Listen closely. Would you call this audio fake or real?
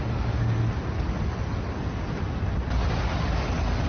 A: real